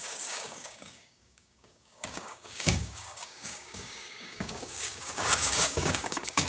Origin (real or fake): fake